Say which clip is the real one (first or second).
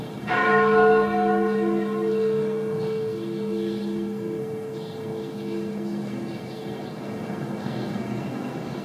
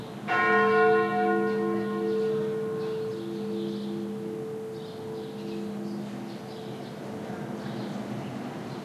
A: second